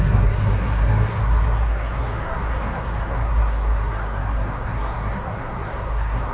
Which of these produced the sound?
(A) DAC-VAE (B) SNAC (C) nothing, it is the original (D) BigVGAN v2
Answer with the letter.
B